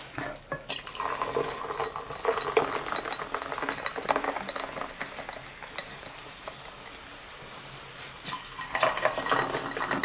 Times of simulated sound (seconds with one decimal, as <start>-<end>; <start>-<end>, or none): 5.8-6.5; 7.1-8.4